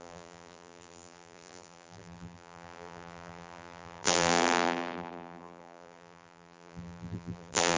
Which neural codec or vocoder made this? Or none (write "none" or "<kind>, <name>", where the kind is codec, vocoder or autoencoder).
vocoder, BigVGAN v2